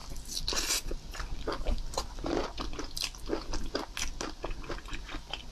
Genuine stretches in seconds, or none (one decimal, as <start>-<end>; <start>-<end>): 0.0-5.5